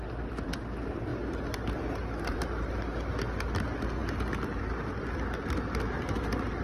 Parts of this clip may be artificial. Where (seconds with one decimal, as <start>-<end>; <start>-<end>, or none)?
none